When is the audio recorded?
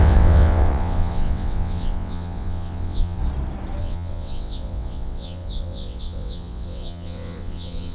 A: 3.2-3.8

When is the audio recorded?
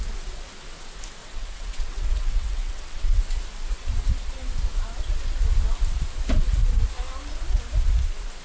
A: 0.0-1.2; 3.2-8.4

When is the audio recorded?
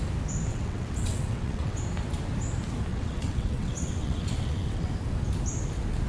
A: 0.0-0.5; 1.8-2.9; 4.9-6.1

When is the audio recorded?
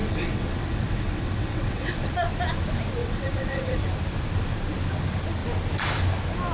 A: 2.1-3.0; 3.8-6.5